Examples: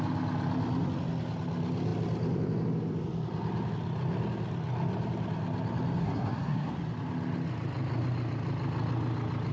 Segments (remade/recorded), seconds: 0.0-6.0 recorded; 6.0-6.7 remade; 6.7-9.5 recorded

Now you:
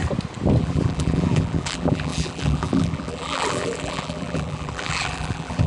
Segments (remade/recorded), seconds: 0.0-0.6 recorded; 0.6-5.7 remade

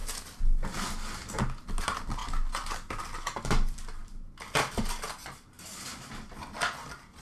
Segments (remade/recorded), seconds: 0.0-7.2 recorded

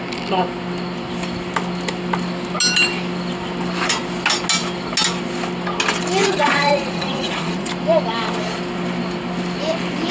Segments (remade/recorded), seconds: 0.0-6.2 recorded; 6.2-7.7 remade; 7.7-10.1 recorded